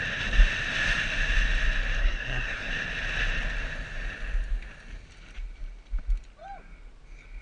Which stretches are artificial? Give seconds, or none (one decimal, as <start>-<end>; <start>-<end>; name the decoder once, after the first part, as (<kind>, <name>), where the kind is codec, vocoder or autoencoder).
2.0-2.7 (codec, SNAC)